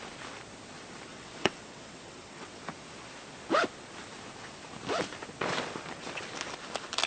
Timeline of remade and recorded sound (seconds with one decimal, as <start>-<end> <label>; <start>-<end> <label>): 0.0-1.1 recorded; 1.1-2.6 remade; 2.6-7.1 recorded